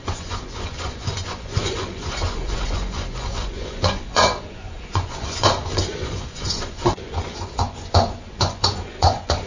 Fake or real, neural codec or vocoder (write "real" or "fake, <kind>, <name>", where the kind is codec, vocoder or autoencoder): fake, vocoder, Vocos